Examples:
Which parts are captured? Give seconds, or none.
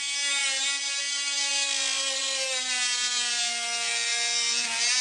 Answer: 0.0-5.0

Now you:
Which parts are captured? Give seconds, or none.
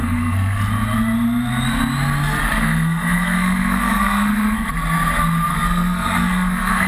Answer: 0.6-2.4; 4.7-5.5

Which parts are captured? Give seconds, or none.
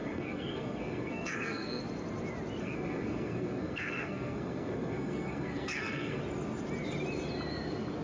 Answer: 1.8-2.6; 6.2-8.0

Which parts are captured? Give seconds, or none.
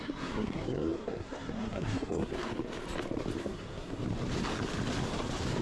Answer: 2.5-3.4; 4.0-5.6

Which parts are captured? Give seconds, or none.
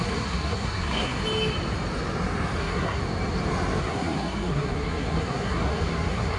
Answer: 1.2-2.6; 3.0-3.8